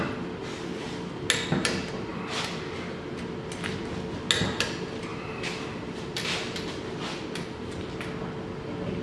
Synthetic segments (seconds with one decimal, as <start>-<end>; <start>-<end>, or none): 2.1-2.6; 5.1-7.9